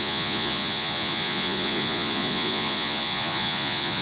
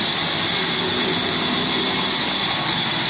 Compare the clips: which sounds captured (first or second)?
second